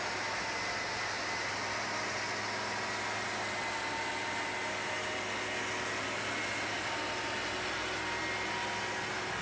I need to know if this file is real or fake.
real